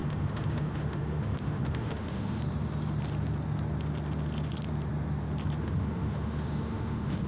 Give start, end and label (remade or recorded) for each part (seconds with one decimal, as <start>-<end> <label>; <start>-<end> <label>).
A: 0.0-2.4 remade; 2.4-5.6 recorded; 5.6-7.3 remade